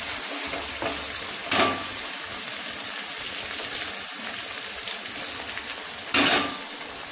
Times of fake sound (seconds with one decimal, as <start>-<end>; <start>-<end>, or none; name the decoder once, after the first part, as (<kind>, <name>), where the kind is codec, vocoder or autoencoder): none